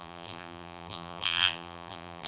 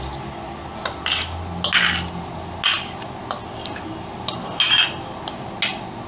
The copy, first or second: first